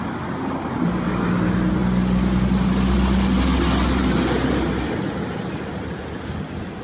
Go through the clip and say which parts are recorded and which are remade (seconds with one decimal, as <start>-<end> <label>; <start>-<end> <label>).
0.0-6.8 recorded